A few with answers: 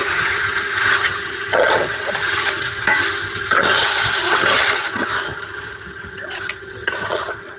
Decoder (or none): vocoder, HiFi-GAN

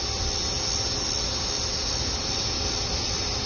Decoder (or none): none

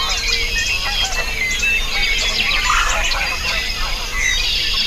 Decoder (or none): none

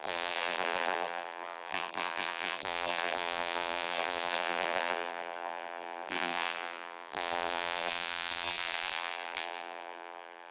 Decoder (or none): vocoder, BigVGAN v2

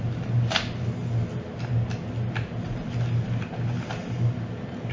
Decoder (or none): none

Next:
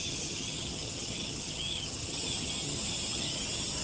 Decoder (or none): vocoder, HiFi-GAN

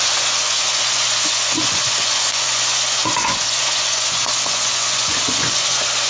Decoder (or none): vocoder, Vocos